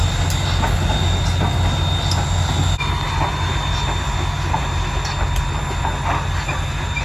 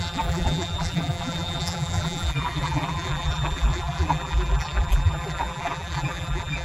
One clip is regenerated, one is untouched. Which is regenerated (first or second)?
second